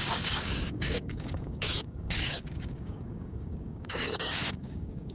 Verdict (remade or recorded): remade